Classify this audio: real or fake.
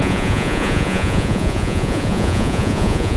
fake